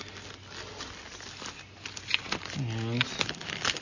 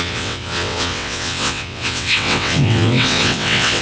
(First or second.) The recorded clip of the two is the first